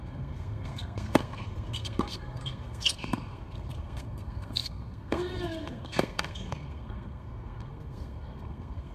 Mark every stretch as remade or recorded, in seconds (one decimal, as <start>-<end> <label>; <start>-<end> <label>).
0.0-8.9 remade